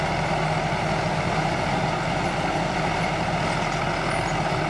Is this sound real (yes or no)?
yes